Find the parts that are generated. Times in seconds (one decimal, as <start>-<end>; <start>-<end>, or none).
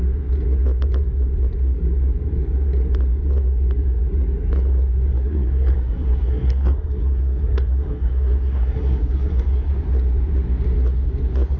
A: 5.1-9.7